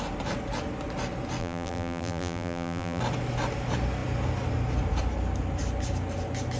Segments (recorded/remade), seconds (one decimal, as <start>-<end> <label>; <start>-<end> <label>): 0.0-1.4 recorded; 1.4-3.0 remade; 3.0-6.6 recorded